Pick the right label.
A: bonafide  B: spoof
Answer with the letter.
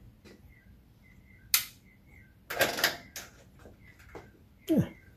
A